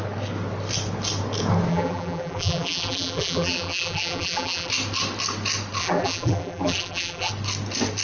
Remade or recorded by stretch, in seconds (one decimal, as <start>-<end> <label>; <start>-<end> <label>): 0.0-1.7 recorded; 1.7-4.7 remade; 4.7-5.8 recorded; 5.8-7.3 remade; 7.3-8.0 recorded